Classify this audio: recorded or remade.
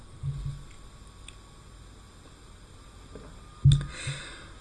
recorded